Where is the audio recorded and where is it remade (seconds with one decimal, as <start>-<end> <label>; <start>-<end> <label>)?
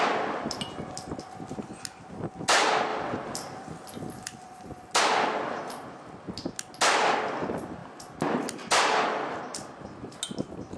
0.0-10.8 recorded